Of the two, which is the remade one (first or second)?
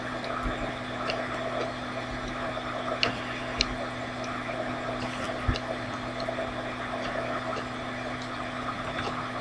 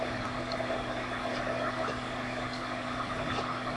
second